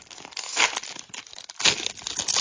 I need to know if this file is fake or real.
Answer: real